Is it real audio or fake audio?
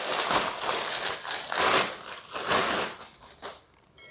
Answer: real